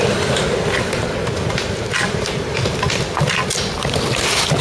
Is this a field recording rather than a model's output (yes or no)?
yes